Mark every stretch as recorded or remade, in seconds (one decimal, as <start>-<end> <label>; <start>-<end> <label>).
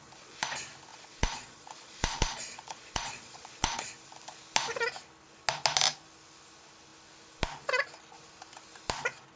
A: 0.0-0.9 recorded; 0.9-3.9 remade; 3.9-9.4 recorded